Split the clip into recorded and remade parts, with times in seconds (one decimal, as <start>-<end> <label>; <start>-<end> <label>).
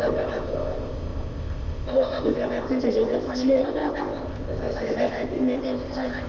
0.0-6.3 remade